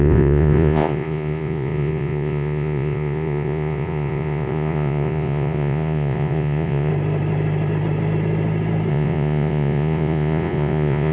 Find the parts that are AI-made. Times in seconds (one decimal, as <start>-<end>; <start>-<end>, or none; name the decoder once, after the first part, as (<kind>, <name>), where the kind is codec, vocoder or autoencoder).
0.0-6.9 (vocoder, Vocos); 8.9-11.1